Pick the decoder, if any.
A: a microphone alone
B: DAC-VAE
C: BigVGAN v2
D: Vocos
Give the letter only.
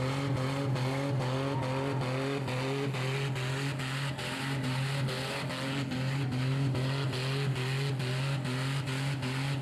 A